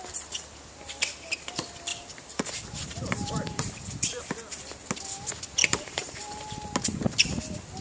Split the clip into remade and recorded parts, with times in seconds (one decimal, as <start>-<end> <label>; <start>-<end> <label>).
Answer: 0.0-1.9 recorded; 1.9-4.2 remade; 4.2-5.6 recorded; 5.6-6.4 remade; 6.4-7.8 recorded